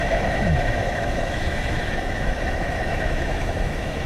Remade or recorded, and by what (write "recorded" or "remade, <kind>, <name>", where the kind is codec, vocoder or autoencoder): remade, autoencoder, DAC-VAE